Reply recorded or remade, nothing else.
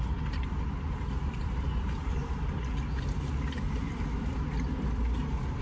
recorded